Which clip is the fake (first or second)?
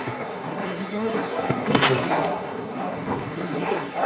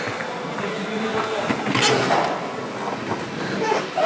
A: first